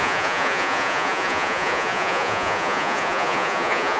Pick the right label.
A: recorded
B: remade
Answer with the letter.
B